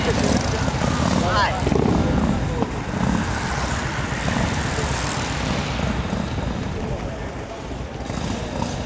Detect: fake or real real